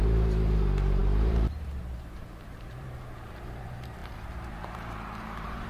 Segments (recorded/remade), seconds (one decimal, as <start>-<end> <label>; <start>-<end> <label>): 0.0-5.7 remade